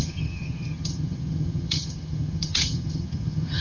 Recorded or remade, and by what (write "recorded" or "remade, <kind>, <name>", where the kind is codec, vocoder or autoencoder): remade, vocoder, HiFi-GAN